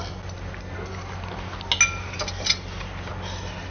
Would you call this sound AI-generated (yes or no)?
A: no